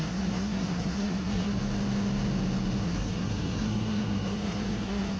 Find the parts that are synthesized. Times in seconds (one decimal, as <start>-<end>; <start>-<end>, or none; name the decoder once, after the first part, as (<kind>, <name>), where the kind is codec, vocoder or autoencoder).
0.0-1.6 (codec, SNAC); 2.8-5.2